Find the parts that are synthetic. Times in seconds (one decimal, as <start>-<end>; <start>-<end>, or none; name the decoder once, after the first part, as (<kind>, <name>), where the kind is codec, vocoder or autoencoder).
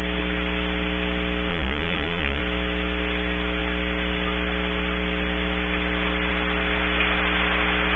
1.5-2.4 (vocoder, Vocos)